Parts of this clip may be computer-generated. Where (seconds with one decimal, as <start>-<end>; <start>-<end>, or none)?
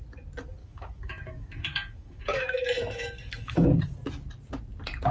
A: 0.6-3.7